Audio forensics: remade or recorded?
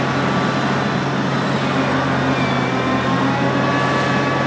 recorded